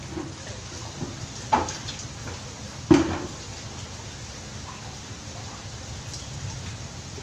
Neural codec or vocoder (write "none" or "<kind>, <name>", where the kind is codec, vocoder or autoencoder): none